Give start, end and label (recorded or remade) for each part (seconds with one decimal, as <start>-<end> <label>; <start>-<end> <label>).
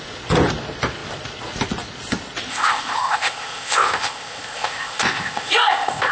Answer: 0.0-2.5 recorded; 2.5-6.1 remade